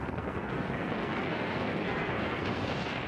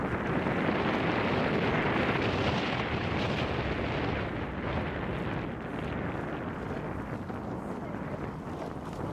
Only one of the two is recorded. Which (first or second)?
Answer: second